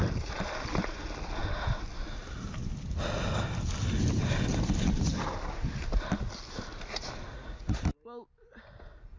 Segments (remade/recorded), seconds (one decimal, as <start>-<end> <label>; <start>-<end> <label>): 0.0-7.3 recorded; 7.3-7.8 remade; 7.8-9.2 recorded

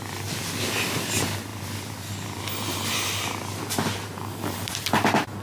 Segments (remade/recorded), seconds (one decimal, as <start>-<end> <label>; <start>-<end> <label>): 0.0-5.4 recorded